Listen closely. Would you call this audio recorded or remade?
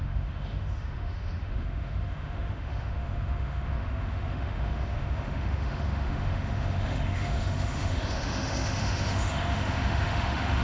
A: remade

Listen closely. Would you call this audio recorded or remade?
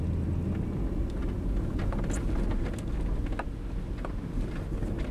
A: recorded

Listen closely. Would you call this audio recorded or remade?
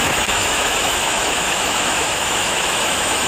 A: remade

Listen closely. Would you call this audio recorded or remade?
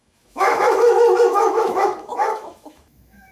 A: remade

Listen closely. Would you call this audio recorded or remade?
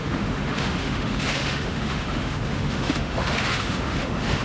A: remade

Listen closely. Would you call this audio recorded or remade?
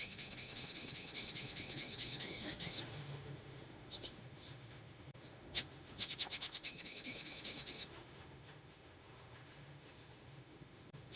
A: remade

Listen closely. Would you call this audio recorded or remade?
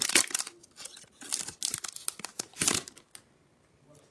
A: recorded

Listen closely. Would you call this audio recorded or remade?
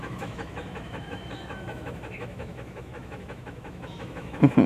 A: remade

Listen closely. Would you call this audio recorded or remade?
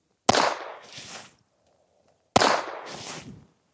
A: recorded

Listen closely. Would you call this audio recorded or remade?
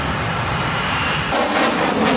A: recorded